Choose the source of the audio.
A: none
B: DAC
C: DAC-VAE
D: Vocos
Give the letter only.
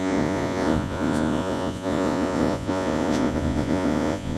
D